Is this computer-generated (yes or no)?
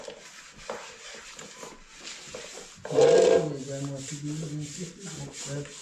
no